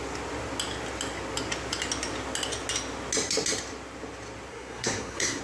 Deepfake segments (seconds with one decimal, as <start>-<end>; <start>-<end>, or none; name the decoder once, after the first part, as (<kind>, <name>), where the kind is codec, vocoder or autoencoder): 4.5-5.4 (codec, SNAC)